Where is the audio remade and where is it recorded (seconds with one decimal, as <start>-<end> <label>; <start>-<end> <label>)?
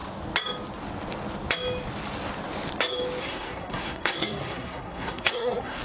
0.0-3.2 recorded; 3.2-5.8 remade